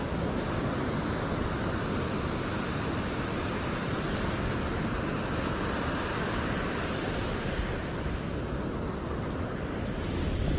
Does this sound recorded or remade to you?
recorded